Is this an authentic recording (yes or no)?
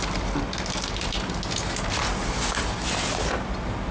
yes